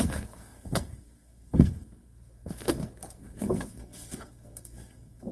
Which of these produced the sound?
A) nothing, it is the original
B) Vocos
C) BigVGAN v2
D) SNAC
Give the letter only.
D